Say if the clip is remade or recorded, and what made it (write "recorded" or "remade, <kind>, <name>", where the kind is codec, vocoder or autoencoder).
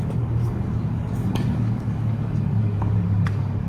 remade, codec, DAC